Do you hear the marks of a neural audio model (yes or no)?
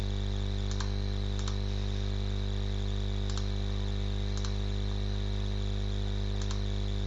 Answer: no